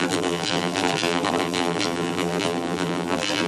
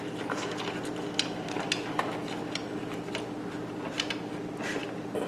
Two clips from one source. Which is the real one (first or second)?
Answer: second